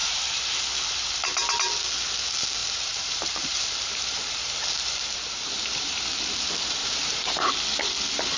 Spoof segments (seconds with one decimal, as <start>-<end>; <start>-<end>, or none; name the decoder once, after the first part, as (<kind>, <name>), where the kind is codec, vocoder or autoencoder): 0.0-0.6 (vocoder, BigVGAN v2); 2.6-6.0; 6.8-7.5